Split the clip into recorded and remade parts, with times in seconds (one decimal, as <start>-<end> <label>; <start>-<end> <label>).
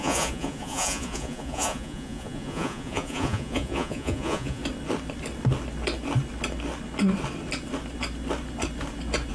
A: 0.0-4.6 remade; 4.6-9.3 recorded